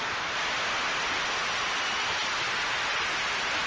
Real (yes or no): yes